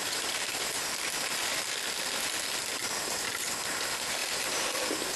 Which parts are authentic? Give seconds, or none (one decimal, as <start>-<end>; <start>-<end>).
0.0-4.2